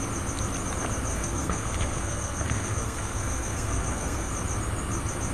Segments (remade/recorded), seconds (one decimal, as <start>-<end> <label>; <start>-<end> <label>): 0.0-1.1 recorded; 1.1-4.3 remade; 4.3-5.3 recorded